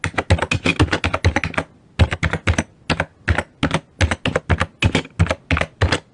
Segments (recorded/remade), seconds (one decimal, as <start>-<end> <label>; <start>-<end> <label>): 0.0-6.1 recorded